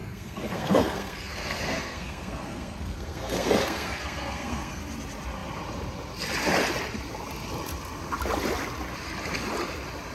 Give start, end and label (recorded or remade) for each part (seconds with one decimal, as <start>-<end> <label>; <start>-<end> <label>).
0.0-4.8 remade; 4.8-10.1 recorded